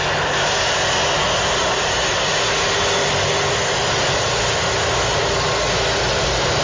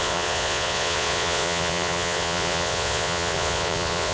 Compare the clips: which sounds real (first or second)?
first